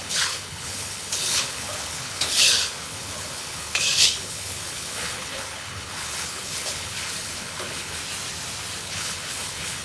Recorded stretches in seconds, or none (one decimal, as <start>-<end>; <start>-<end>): 8.0-8.8